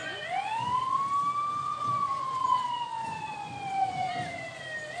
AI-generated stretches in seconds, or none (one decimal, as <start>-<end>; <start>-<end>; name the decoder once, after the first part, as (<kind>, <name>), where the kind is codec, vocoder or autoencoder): 0.0-1.0 (vocoder, Vocos); 1.6-4.6